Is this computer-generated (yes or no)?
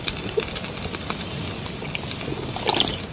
no